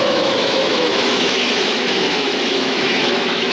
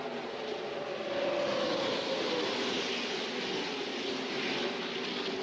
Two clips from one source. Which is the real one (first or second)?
second